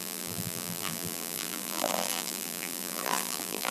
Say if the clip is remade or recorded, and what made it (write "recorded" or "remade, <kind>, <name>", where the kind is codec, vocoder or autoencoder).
remade, vocoder, BigVGAN v2